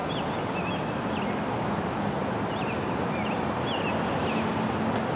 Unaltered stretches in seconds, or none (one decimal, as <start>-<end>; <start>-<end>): 0.0-5.2